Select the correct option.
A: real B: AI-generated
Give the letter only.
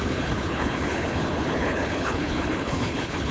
B